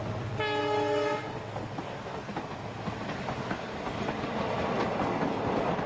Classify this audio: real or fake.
real